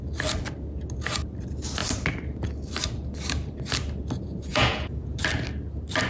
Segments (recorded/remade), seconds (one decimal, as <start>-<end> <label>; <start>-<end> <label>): 0.0-4.5 recorded; 4.5-5.2 remade; 5.2-6.1 recorded